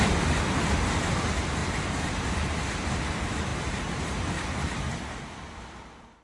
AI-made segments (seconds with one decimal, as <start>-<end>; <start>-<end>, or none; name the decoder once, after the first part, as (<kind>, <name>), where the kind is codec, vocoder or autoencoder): 1.6-2.3 (vocoder, BigVGAN v2); 3.5-4.3